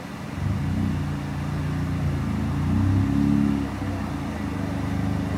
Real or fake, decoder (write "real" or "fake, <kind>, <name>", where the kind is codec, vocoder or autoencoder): real